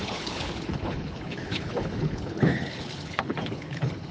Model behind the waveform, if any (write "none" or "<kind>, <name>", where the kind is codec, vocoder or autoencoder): codec, HILCodec